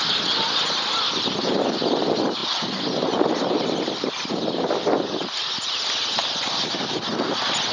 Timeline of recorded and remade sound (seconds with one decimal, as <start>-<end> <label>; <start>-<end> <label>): 0.0-7.7 recorded